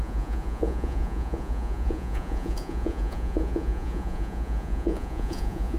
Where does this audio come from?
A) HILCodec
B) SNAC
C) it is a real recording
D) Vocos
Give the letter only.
D